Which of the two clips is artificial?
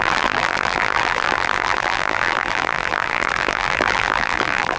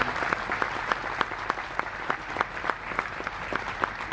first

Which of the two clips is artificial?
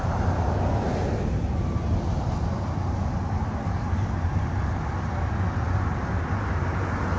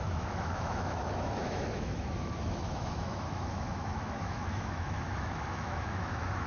second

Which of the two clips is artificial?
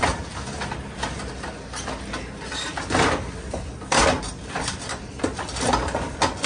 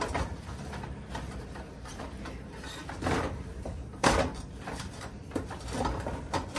second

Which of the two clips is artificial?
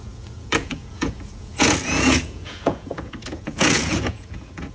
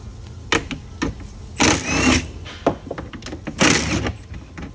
first